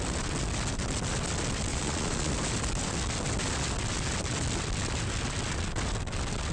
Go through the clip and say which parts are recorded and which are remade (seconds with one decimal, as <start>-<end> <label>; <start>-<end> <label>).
0.0-1.7 recorded; 1.7-2.3 remade; 2.3-6.5 recorded